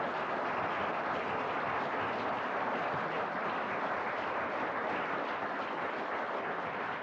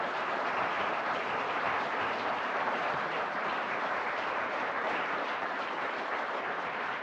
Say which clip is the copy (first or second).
second